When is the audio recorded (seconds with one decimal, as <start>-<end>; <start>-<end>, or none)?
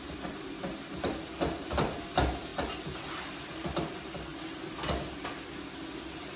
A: 0.0-4.3; 5.1-6.4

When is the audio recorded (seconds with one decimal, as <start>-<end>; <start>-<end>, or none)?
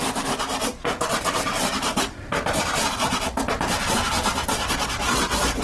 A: 0.0-0.7; 4.1-5.6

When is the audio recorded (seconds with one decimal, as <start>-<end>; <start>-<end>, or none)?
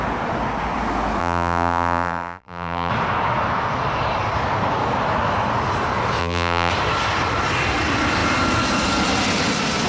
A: 0.0-1.2; 2.9-6.2; 6.7-9.9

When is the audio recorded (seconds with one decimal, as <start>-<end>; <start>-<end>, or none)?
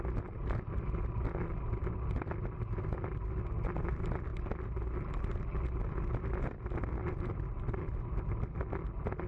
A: 0.0-9.3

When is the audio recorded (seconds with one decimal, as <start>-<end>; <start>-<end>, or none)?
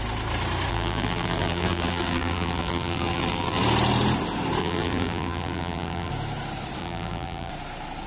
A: 0.0-0.7; 3.6-4.6; 6.1-6.8; 7.5-8.1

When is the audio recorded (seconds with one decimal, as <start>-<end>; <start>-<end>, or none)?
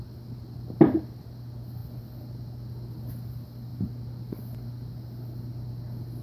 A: 0.0-3.7; 4.4-6.2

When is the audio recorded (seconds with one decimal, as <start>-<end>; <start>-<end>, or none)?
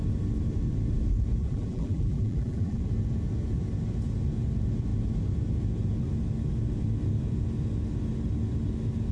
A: 0.0-1.4; 2.8-9.1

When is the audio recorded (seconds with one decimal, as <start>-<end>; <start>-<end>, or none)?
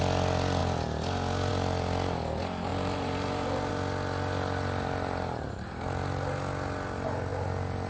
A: 0.0-2.7; 3.7-7.9